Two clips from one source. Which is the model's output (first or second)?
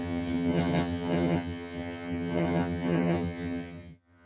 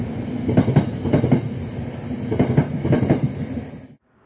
first